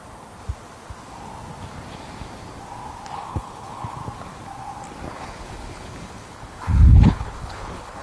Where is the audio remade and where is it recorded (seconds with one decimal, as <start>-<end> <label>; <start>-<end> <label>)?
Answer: 0.0-3.1 recorded; 3.1-4.0 remade; 4.0-5.1 recorded; 5.1-8.0 remade